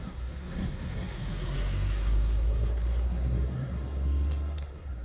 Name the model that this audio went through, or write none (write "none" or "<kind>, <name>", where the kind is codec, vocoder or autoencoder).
codec, SNAC